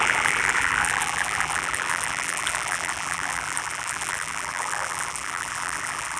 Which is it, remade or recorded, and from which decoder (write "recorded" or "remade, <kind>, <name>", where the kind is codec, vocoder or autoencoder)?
remade, vocoder, BigVGAN v2